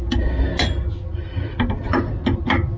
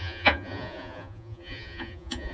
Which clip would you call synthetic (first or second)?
second